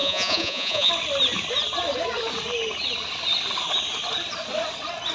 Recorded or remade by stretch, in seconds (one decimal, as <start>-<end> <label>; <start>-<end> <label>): 0.0-0.9 remade; 0.9-5.1 recorded